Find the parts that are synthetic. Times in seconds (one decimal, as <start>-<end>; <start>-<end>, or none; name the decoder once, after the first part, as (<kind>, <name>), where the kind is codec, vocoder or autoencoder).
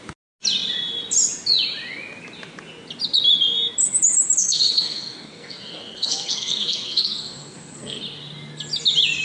4.4-8.0 (codec, SNAC)